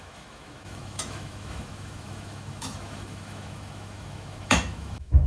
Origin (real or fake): fake